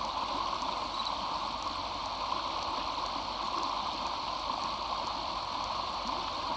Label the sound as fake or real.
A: real